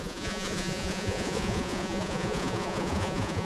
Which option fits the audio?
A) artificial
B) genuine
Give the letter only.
A